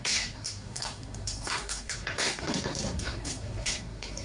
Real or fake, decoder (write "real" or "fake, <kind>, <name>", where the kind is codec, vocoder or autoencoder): fake, codec, SNAC